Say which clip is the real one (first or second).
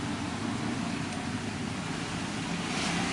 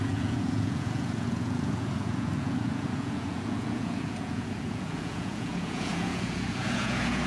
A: first